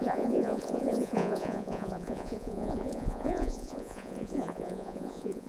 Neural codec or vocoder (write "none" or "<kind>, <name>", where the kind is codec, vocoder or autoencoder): vocoder, Vocos